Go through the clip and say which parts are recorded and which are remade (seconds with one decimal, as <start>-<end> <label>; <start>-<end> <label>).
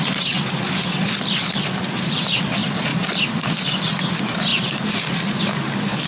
0.0-6.1 recorded